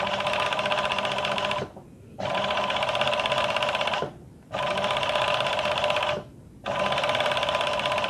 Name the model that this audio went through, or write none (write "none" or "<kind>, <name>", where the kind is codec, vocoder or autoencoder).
none